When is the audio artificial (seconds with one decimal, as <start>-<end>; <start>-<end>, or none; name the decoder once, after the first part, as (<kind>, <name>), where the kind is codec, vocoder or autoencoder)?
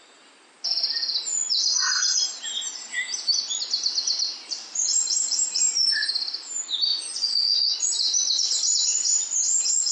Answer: 6.9-7.7 (vocoder, Vocos)